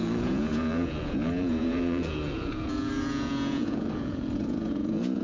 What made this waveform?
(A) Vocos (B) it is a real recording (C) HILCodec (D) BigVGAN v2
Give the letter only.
A